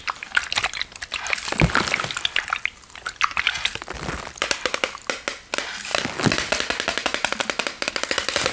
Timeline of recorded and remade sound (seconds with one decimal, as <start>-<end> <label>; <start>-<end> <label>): 0.0-8.5 recorded